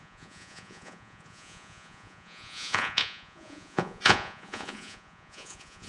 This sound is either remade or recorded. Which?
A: remade